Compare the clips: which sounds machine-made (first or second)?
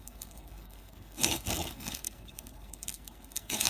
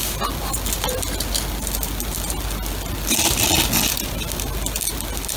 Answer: first